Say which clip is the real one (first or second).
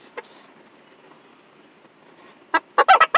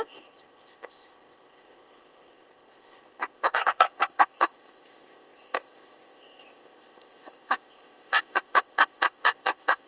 first